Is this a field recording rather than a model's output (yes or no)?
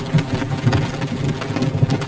yes